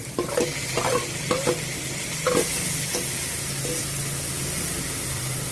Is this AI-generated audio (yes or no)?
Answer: no